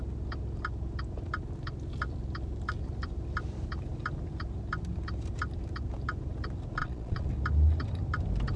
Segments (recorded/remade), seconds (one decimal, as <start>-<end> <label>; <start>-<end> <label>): 0.0-6.8 recorded; 6.8-7.3 remade; 7.3-8.6 recorded